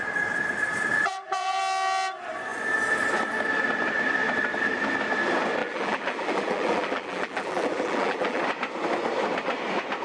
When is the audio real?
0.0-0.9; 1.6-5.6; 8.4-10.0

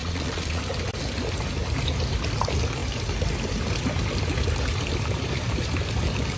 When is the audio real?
0.6-6.4

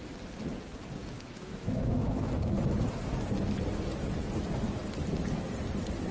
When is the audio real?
0.0-1.0; 2.3-6.1

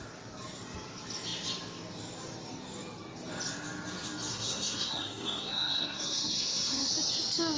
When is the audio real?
0.0-4.3; 6.9-7.6

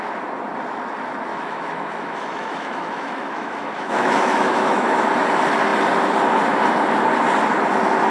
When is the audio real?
0.0-1.3; 5.0-8.1

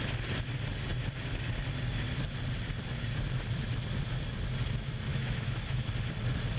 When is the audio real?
0.0-5.1; 5.9-6.6

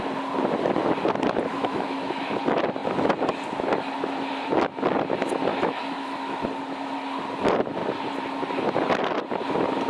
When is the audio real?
0.0-1.5; 2.4-5.5; 6.4-9.9

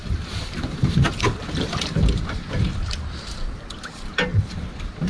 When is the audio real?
none